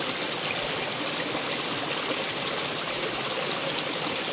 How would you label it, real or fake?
real